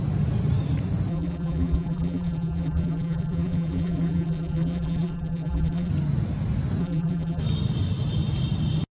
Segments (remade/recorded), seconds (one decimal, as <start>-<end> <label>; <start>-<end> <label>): 0.0-1.1 recorded; 1.1-5.9 remade; 5.9-6.8 recorded; 6.8-7.4 remade; 7.4-9.0 recorded